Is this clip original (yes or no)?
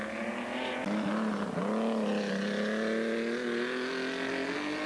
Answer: yes